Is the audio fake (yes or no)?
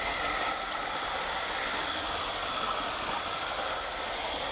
no